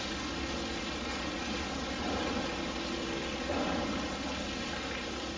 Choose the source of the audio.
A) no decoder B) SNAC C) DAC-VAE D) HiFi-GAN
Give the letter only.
A